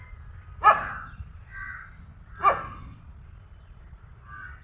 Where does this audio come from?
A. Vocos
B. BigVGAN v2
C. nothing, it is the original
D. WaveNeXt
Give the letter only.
C